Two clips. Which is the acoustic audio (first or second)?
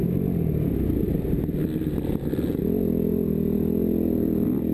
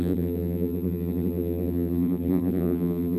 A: first